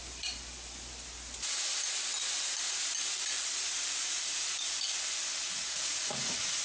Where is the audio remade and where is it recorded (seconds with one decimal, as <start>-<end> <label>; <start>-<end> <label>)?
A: 0.0-6.6 recorded